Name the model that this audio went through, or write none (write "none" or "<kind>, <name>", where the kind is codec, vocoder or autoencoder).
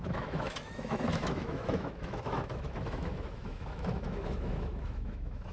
autoencoder, DAC-VAE